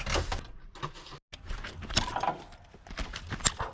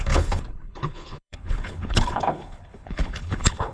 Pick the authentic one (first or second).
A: first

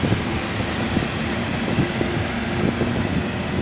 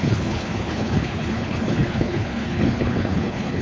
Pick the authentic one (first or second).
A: first